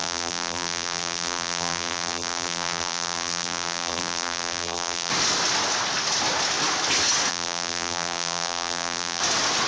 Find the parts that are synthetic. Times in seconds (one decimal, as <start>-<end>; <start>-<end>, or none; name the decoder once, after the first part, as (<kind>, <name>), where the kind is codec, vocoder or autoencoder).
0.0-5.1 (vocoder, BigVGAN v2); 7.3-9.2